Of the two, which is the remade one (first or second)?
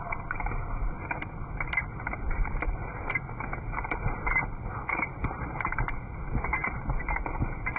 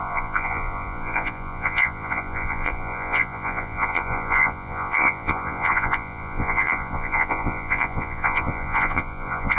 second